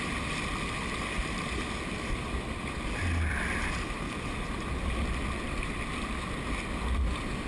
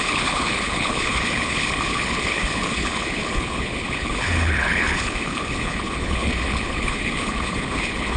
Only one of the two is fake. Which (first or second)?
second